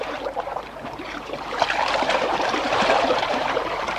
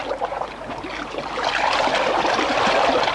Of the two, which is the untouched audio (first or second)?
second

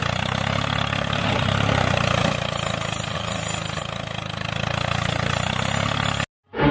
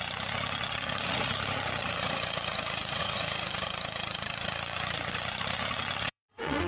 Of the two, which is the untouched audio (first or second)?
first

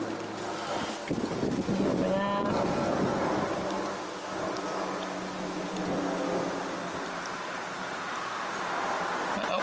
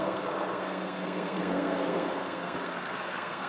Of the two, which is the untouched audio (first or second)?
first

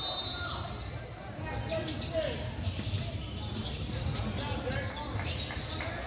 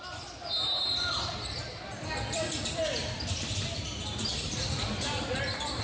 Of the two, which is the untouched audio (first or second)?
first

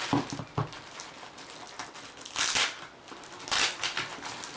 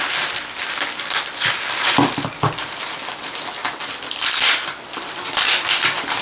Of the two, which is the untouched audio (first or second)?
first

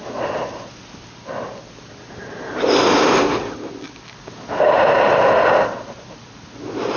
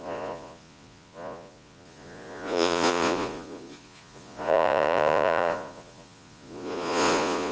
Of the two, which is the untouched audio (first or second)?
first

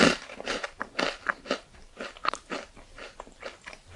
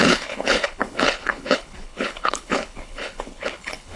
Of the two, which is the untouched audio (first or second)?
first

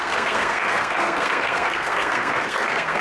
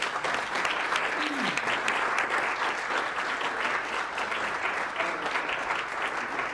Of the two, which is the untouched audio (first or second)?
second